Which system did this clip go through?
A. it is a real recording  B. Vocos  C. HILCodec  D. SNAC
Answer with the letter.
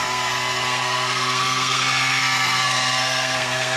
D